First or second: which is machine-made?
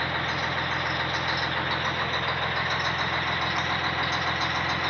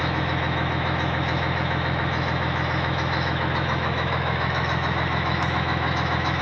second